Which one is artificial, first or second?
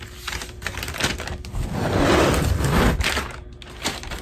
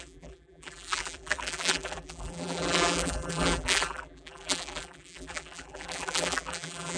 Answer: second